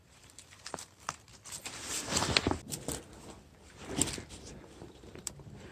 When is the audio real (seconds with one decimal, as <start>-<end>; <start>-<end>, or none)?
1.3-4.7